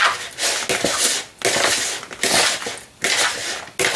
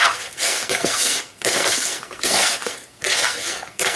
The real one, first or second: first